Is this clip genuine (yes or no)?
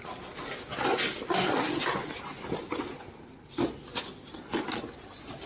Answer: yes